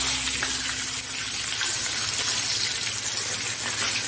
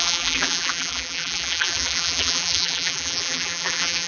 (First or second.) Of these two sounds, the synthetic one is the second